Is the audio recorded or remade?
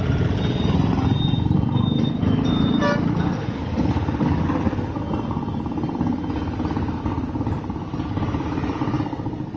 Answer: recorded